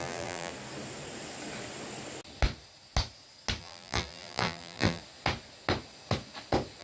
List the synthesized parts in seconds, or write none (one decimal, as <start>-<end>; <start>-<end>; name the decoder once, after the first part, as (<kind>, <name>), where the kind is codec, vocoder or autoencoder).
0.0-0.5 (vocoder, BigVGAN v2); 3.6-5.0